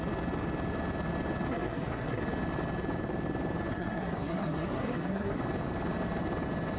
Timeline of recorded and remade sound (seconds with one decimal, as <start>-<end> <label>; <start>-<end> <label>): 0.0-1.5 recorded; 1.5-2.2 remade; 2.2-3.7 recorded; 3.7-5.4 remade; 5.4-6.8 recorded

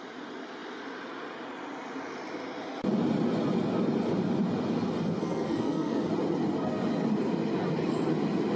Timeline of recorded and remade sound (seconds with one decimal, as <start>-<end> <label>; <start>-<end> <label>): 0.0-5.2 recorded; 5.2-6.1 remade; 6.1-8.6 recorded